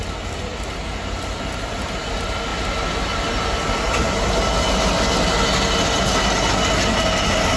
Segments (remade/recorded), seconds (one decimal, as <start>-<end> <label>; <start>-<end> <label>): 0.0-7.6 recorded